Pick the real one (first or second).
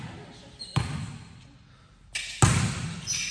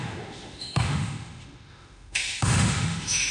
first